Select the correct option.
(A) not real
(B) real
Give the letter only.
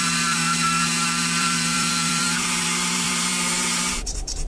A